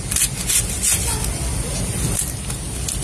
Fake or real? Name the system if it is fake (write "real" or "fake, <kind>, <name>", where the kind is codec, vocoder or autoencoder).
real